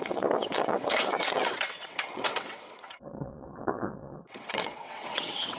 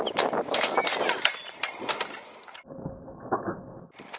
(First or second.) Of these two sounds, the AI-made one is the first